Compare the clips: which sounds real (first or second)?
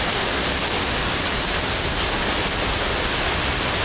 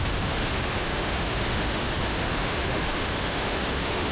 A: first